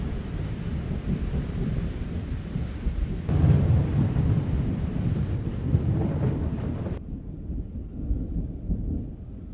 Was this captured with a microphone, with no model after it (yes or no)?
yes